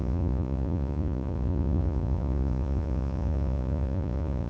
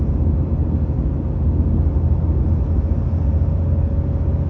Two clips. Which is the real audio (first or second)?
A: second